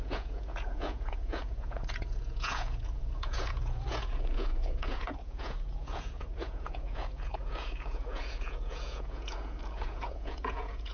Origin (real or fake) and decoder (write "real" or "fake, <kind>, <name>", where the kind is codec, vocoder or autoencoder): fake, vocoder, Vocos